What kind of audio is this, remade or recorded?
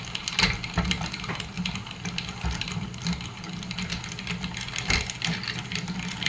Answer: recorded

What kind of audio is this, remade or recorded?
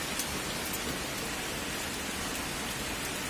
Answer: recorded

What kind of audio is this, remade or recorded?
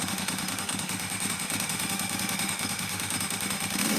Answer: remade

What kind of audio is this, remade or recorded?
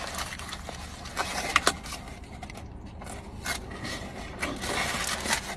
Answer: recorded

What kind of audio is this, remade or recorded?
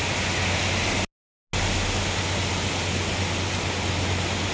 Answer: recorded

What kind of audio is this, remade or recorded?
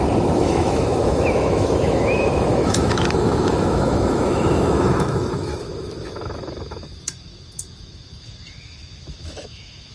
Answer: remade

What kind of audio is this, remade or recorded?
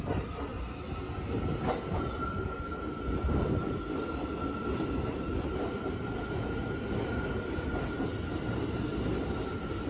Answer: recorded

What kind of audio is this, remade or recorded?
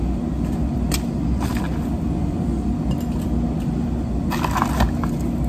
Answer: recorded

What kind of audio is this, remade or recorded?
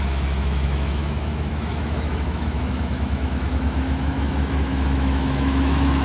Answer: remade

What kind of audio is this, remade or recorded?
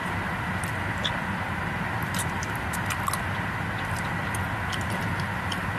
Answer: recorded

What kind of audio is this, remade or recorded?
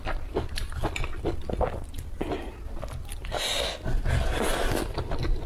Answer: recorded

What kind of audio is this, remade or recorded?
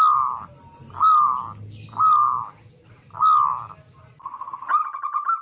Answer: recorded